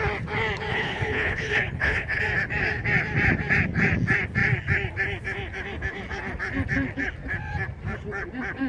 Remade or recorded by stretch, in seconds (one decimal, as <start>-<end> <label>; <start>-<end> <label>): 0.0-0.7 recorded; 0.7-2.2 remade; 2.2-8.7 recorded